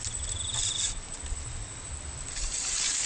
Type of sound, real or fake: real